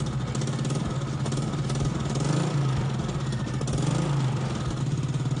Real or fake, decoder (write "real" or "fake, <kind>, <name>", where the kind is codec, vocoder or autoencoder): real